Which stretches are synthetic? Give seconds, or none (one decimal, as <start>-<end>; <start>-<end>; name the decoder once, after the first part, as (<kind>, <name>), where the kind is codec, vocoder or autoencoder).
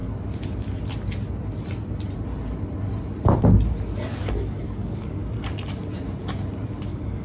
4.3-5.2 (codec, DAC); 6.8-7.2